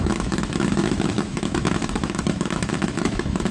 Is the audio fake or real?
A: fake